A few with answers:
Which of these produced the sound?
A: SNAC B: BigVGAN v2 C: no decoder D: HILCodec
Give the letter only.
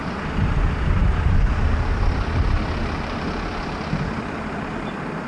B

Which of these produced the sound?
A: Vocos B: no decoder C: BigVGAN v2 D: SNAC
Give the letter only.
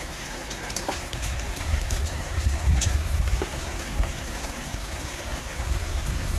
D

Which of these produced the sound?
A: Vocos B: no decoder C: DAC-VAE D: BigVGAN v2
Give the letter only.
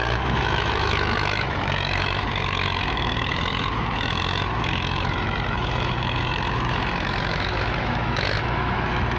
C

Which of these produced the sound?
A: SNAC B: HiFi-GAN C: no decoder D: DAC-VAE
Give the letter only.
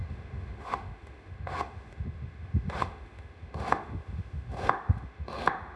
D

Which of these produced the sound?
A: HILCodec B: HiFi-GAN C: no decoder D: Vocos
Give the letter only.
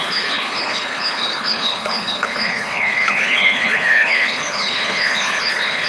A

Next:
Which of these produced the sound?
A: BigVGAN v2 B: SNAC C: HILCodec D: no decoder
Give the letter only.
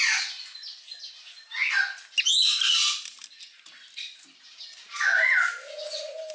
D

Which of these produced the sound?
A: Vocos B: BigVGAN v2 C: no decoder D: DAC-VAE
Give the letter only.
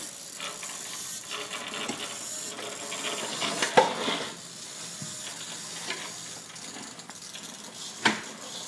C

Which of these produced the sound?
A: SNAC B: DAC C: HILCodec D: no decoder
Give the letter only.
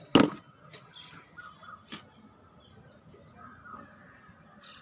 D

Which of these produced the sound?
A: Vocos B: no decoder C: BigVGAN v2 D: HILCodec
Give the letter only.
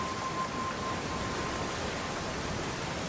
B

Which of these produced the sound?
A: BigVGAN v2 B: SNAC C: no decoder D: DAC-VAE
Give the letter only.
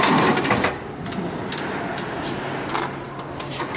C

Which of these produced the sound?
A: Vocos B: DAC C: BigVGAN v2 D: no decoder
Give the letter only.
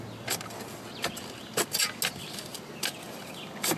D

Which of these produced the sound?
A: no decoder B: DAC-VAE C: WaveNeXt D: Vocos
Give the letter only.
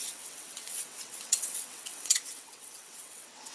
C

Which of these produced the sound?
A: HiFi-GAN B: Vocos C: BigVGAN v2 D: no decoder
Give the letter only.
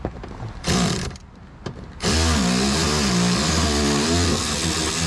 D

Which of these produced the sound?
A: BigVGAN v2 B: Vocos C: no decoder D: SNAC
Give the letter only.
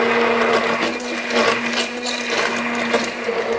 C